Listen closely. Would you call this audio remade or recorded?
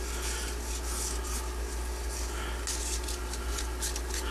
recorded